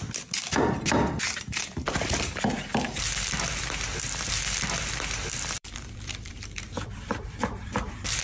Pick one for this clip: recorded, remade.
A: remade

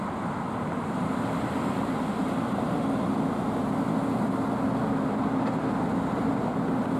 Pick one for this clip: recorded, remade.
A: recorded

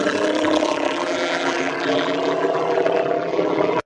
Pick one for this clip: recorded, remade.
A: remade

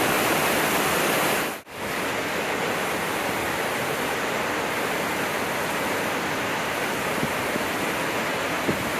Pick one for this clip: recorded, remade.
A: recorded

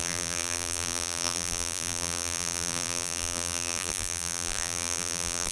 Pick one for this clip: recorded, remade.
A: remade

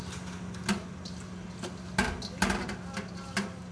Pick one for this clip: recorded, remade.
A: recorded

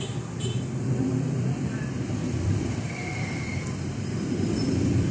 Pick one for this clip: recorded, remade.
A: remade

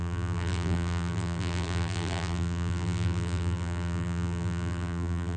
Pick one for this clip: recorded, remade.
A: remade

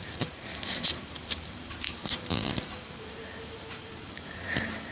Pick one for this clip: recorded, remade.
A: remade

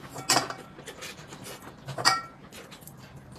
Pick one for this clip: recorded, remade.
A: recorded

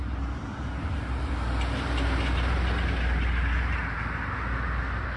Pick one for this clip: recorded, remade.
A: recorded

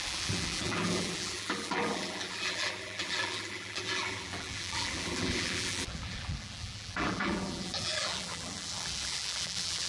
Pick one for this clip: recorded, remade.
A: remade